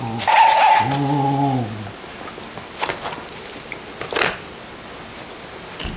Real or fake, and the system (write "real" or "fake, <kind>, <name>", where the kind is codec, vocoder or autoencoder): real